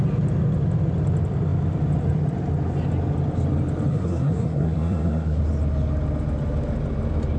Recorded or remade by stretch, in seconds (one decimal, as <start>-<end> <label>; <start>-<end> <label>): 0.0-3.9 recorded; 3.9-5.4 remade; 5.4-7.4 recorded